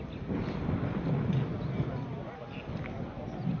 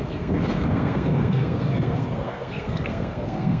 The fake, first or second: second